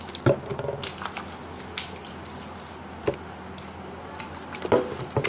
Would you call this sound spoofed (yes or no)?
no